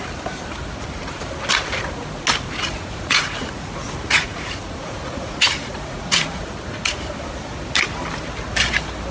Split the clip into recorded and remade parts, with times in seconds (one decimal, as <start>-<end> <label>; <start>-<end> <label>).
0.0-2.8 recorded; 2.8-6.5 remade; 6.5-9.1 recorded